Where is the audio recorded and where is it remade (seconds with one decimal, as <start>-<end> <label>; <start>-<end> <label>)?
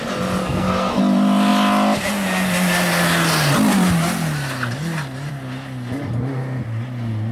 0.0-0.4 recorded; 0.4-1.0 remade; 1.0-7.3 recorded